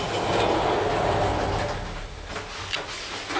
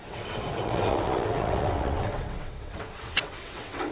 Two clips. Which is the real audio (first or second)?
first